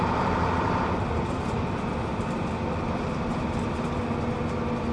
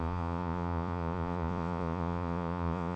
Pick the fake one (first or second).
second